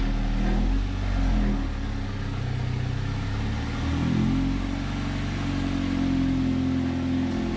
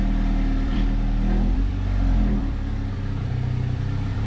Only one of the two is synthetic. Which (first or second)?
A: second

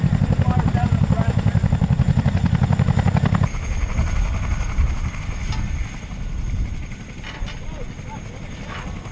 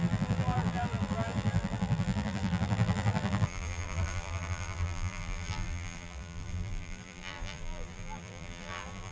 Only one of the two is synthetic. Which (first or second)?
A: second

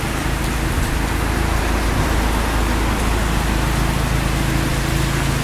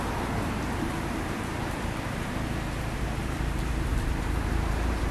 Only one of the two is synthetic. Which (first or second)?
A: second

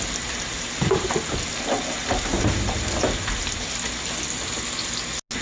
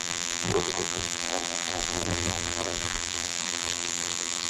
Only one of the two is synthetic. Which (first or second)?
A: second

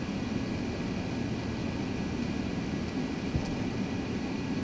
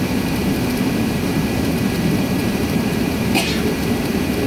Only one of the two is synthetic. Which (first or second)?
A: second